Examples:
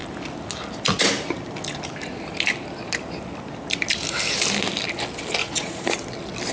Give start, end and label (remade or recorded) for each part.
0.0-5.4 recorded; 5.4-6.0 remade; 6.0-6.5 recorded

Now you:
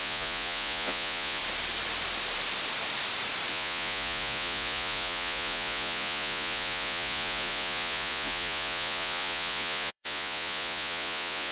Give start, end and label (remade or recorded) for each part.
0.0-1.4 remade; 1.4-3.5 recorded; 3.5-11.5 remade

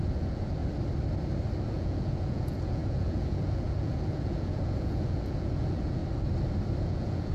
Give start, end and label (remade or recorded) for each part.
0.0-0.6 remade; 0.6-1.7 recorded; 1.7-6.0 remade; 6.0-6.8 recorded; 6.8-7.3 remade